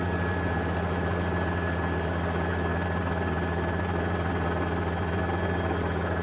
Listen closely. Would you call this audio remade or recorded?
recorded